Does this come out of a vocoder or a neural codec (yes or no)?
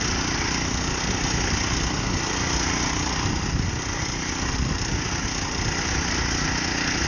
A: no